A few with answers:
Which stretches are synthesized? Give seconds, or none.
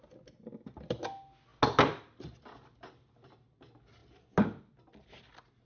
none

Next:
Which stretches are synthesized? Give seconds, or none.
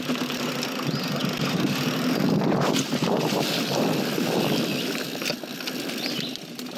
none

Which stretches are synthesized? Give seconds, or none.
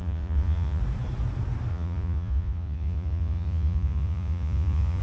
0.0-0.8 (vocoder, Vocos); 1.7-5.0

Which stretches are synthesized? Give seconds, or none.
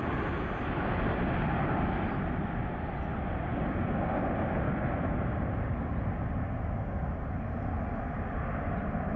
none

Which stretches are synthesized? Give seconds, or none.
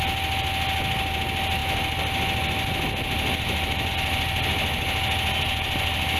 none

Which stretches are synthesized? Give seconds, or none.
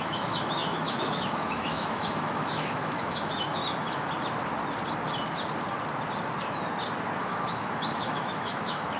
0.0-3.6 (autoencoder, DAC-VAE); 7.2-9.0